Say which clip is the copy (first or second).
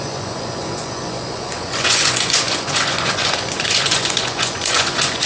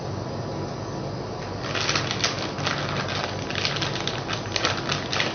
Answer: first